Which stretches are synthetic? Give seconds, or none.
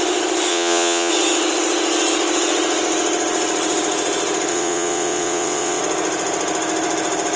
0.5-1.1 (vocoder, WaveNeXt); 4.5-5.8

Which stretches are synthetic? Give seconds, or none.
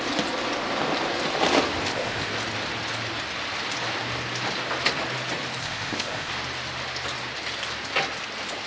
1.8-2.3 (codec, ZipCodec); 5.6-6.3